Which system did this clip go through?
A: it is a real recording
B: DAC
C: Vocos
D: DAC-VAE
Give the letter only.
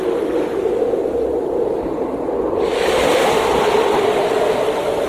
A